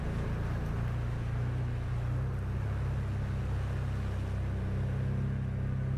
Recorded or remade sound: recorded